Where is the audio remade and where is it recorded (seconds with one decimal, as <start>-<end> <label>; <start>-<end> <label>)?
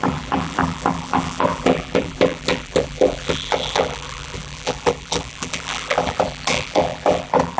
0.0-7.6 remade